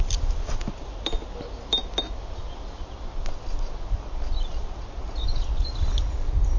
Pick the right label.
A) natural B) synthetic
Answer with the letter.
A